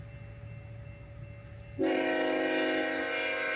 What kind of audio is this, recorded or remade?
recorded